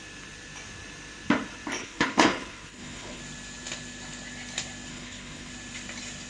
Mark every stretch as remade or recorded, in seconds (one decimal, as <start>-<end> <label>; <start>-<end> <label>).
0.0-1.8 recorded; 1.8-3.2 remade; 3.2-4.9 recorded; 4.9-5.5 remade; 5.5-6.3 recorded